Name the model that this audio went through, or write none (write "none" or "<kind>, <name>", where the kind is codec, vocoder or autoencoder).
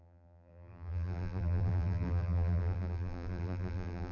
vocoder, BigVGAN v2